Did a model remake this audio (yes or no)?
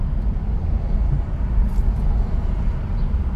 no